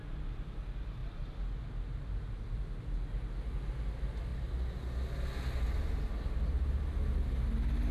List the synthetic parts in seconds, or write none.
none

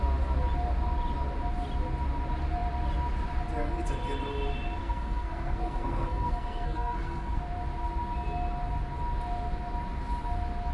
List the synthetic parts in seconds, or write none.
4.8-7.4 (codec, SNAC)

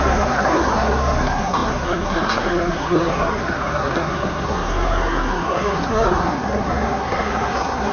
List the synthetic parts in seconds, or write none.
0.0-7.9 (codec, SNAC)

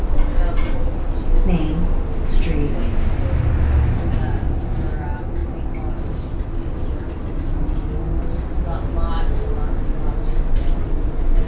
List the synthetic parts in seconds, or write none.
none

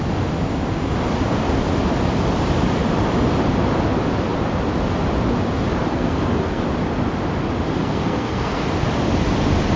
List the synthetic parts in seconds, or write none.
5.9-6.6 (codec, SNAC); 7.8-8.6

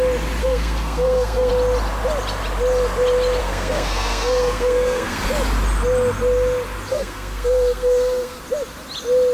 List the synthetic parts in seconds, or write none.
0.4-1.5 (codec, SNAC); 3.4-5.3; 6.9-8.4